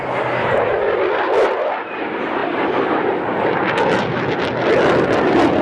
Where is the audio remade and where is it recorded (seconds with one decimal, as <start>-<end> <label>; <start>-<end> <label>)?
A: 0.0-5.6 recorded